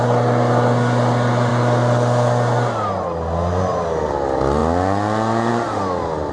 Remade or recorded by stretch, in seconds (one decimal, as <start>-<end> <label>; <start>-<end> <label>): 0.0-6.3 recorded